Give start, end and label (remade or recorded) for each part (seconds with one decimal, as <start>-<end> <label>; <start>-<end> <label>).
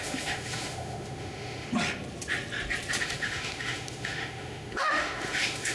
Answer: 0.0-1.7 remade; 1.7-3.0 recorded; 3.0-5.7 remade